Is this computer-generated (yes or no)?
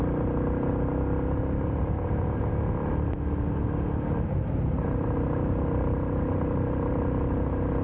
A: no